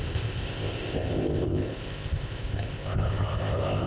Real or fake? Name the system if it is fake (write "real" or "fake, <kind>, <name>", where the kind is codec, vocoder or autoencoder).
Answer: fake, codec, ZipCodec